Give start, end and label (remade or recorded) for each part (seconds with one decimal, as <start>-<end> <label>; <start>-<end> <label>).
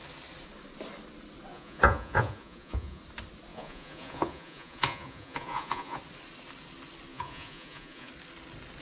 0.0-1.5 recorded; 1.5-3.0 remade; 3.0-3.5 recorded; 3.5-6.0 remade; 6.0-7.1 recorded; 7.1-8.1 remade; 8.1-8.8 recorded